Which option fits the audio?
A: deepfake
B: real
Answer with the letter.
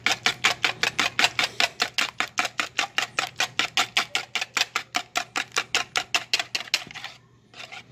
B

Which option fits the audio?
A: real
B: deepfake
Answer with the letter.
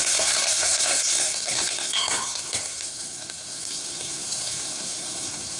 B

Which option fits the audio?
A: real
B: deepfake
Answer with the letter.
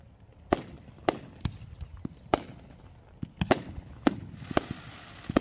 A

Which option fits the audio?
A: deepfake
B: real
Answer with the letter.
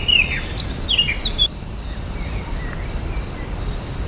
A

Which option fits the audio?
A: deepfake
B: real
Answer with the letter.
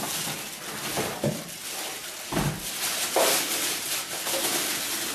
B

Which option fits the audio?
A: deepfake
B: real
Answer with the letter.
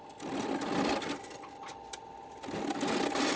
B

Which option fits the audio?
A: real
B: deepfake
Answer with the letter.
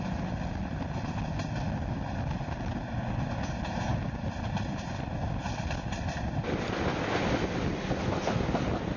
A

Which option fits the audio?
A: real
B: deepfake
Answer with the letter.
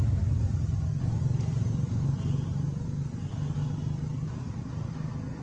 A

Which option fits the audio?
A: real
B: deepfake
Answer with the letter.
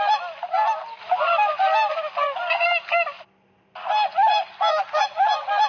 A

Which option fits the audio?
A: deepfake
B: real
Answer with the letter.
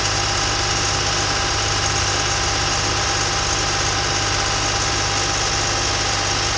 B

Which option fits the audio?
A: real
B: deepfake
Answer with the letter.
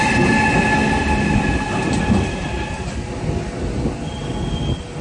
A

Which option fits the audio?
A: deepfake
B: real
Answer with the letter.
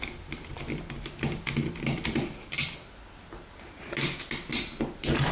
B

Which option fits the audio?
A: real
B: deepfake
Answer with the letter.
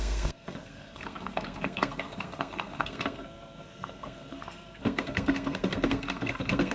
B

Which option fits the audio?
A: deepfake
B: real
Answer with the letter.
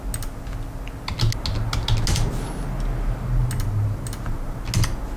B